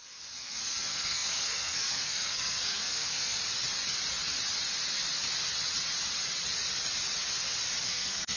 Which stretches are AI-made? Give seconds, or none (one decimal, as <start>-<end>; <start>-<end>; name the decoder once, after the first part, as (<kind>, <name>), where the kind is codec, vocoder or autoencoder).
0.0-3.4 (codec, SNAC); 7.9-8.4